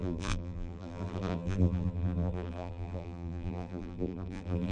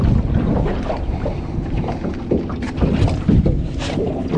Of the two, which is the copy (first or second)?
first